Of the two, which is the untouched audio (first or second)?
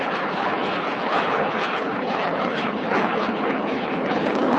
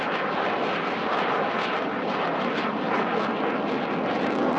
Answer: second